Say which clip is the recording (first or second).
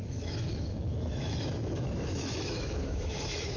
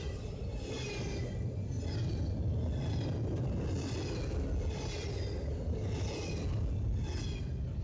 second